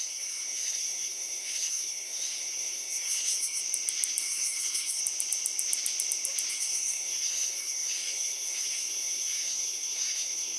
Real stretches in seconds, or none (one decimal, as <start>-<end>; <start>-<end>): 3.6-4.2; 5.0-6.5